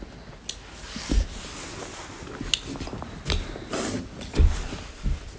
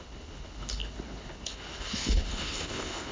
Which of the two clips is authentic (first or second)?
first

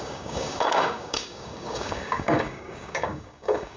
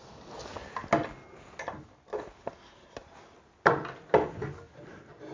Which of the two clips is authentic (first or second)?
second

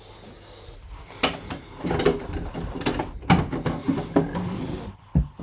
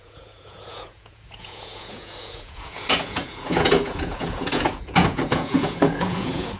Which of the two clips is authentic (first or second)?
first